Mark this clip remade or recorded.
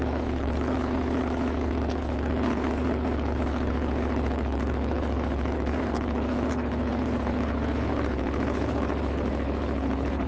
remade